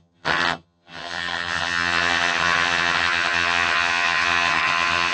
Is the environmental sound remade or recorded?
remade